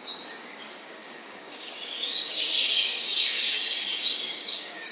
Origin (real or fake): fake